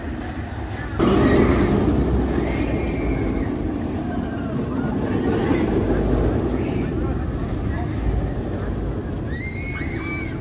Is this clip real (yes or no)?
yes